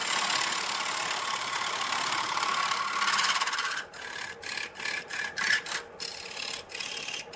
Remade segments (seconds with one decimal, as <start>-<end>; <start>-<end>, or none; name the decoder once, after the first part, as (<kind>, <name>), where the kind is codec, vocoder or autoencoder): none